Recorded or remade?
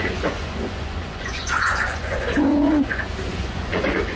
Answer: remade